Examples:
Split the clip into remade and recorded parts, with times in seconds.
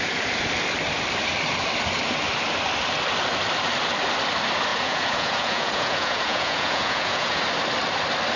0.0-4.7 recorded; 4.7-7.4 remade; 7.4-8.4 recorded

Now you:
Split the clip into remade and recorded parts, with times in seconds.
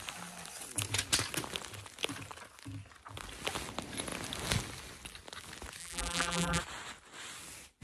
0.0-5.8 recorded; 5.8-6.6 remade; 6.6-7.8 recorded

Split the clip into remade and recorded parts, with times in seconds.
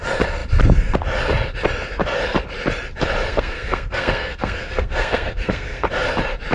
0.0-3.3 recorded; 3.3-5.9 remade; 5.9-6.5 recorded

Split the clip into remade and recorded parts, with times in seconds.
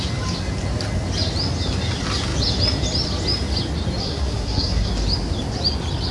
0.0-4.0 recorded; 4.0-4.9 remade; 4.9-6.1 recorded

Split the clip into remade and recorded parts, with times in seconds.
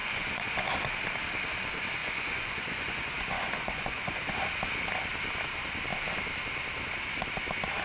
0.0-0.7 remade; 0.7-2.0 recorded; 2.0-4.4 remade; 4.4-7.8 recorded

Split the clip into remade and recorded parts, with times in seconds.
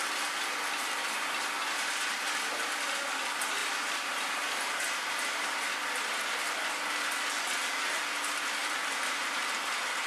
0.0-1.6 recorded; 1.6-2.2 remade; 2.2-3.6 recorded; 3.6-5.7 remade; 5.7-8.6 recorded; 8.6-9.4 remade; 9.4-10.1 recorded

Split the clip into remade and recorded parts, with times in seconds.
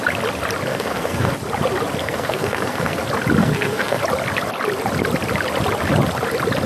0.0-0.7 recorded; 0.7-1.3 remade; 1.3-2.0 recorded; 2.0-3.0 remade; 3.0-3.4 recorded; 3.4-4.0 remade; 4.0-6.7 recorded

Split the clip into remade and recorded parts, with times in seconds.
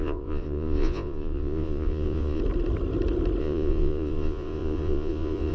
0.0-2.4 remade; 2.4-3.4 recorded; 3.4-5.5 remade